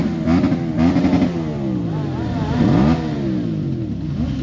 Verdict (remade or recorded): recorded